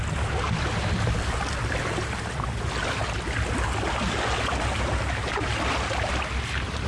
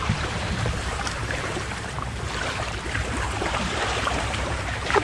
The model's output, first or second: second